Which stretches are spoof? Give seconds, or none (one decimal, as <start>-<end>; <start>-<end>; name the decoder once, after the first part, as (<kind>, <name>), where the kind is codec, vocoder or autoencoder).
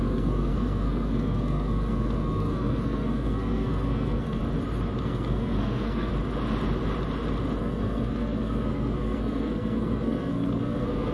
0.0-4.4 (codec, SNAC); 5.0-6.1; 7.6-11.1